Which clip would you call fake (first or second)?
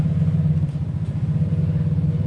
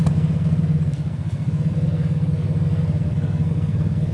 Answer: second